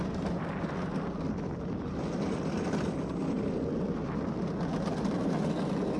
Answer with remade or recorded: recorded